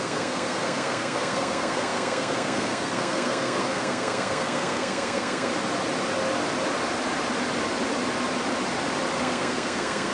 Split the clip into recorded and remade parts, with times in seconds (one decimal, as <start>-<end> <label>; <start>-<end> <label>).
0.0-5.5 remade; 5.5-9.2 recorded; 9.2-10.1 remade